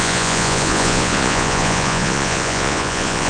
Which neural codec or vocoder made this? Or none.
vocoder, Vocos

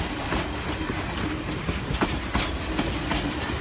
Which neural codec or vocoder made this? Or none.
none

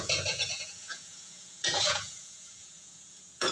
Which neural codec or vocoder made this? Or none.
vocoder, Vocos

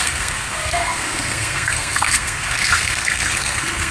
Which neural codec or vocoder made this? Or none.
codec, SNAC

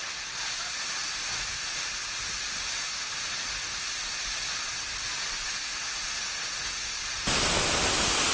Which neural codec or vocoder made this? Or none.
none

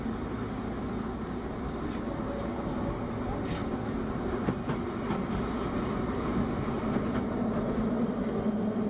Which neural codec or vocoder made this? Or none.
none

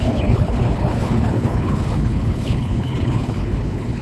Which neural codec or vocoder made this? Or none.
codec, HILCodec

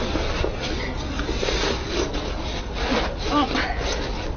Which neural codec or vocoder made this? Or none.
none